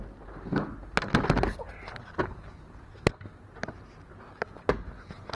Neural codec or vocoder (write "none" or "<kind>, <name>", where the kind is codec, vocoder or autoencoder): none